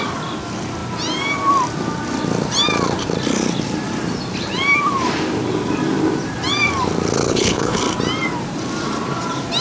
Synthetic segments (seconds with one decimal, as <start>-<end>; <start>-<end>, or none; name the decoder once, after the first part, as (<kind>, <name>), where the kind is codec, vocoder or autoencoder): 7.3-7.8 (codec, HILCodec)